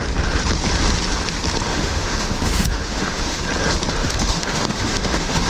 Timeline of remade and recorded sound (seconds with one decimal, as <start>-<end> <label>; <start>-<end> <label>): 0.0-1.7 recorded; 1.7-3.4 remade; 3.4-4.0 recorded; 4.0-5.5 remade

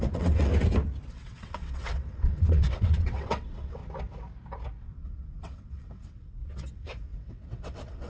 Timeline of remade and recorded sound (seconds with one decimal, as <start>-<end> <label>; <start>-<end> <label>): 0.0-0.5 remade; 0.5-1.1 recorded; 1.1-3.8 remade; 3.8-4.8 recorded; 4.8-8.1 remade

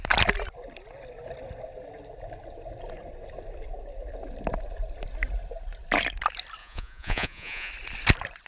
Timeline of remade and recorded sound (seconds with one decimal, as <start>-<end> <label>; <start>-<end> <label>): 0.0-6.6 recorded; 6.6-7.7 remade; 7.7-8.5 recorded